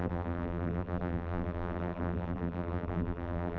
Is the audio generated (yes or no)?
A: yes